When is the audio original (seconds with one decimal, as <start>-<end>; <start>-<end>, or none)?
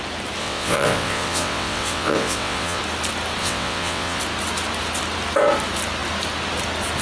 0.0-0.4; 2.8-3.4; 4.2-7.0